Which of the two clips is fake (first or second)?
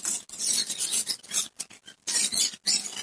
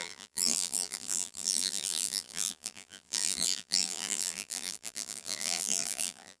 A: second